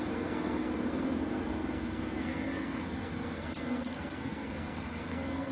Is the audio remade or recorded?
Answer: remade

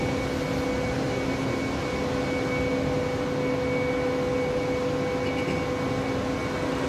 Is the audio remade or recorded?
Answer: recorded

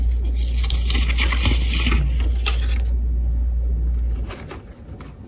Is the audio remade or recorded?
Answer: recorded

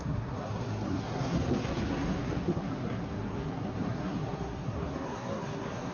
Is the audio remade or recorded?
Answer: remade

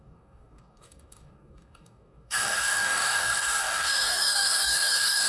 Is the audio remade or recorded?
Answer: remade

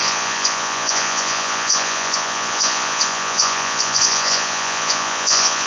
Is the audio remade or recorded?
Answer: remade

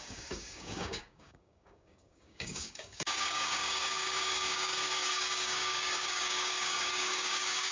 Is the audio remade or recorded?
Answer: remade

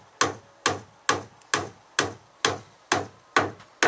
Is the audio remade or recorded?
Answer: recorded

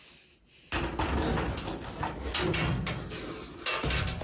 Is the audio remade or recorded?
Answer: recorded